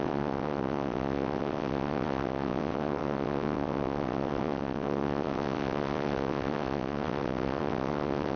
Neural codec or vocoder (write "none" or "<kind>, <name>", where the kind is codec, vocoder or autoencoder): vocoder, WaveNeXt